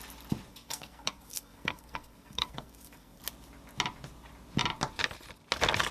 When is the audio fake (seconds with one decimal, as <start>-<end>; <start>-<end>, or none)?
0.5-3.2